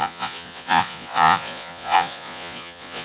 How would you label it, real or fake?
fake